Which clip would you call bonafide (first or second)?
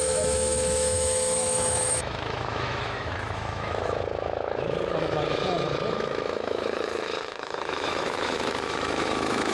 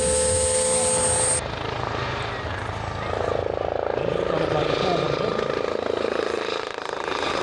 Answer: second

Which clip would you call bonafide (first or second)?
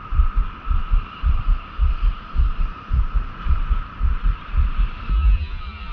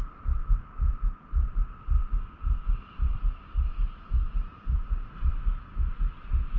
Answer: second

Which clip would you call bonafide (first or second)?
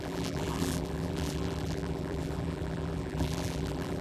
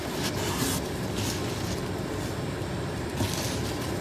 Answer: second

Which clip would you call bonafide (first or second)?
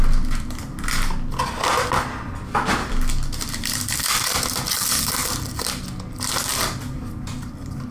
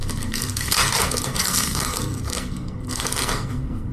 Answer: first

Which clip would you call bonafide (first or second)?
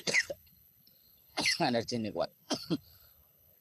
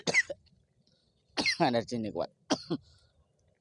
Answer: second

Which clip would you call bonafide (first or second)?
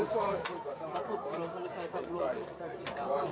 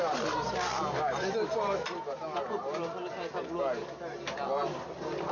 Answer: second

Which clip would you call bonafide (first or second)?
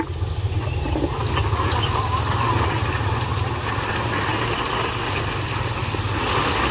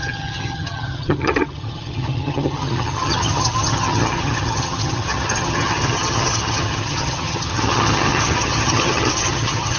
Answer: first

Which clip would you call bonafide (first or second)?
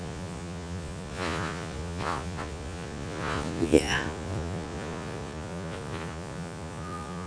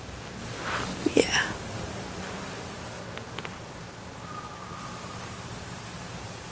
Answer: second